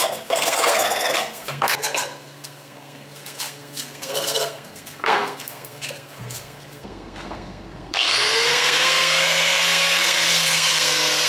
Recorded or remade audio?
remade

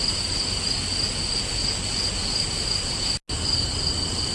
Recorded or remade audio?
recorded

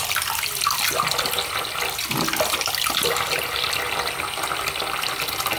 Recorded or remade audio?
recorded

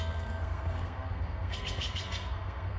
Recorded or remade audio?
remade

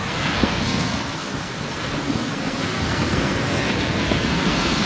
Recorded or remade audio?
remade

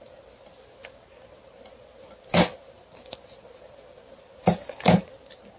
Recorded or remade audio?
recorded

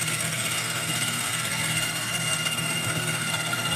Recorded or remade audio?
remade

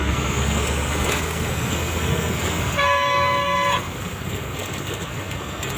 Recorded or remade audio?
remade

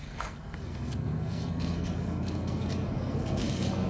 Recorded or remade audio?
remade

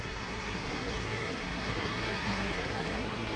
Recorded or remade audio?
remade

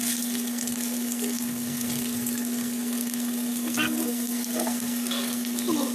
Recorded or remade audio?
remade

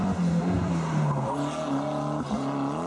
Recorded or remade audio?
recorded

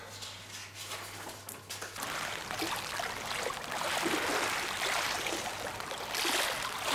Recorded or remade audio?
recorded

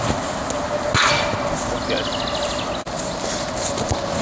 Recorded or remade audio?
recorded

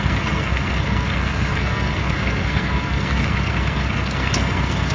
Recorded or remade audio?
remade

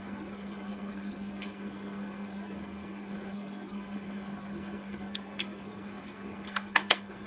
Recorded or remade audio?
remade